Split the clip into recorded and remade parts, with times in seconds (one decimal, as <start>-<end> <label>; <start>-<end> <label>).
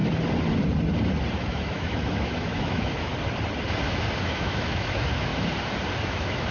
0.0-1.3 recorded; 1.3-3.1 remade; 3.1-4.2 recorded; 4.2-5.3 remade; 5.3-6.0 recorded; 6.0-6.5 remade